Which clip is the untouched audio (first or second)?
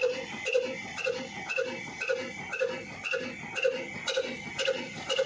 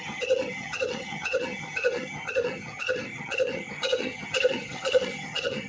first